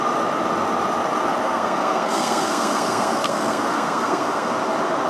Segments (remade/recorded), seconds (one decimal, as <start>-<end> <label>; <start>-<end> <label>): 0.0-1.4 recorded; 1.4-4.5 remade; 4.5-5.1 recorded